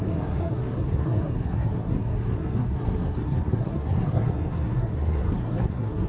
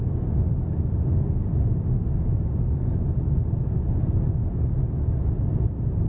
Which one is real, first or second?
second